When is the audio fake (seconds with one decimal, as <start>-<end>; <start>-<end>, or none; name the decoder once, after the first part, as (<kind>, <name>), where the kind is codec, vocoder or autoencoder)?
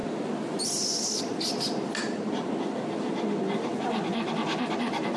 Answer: none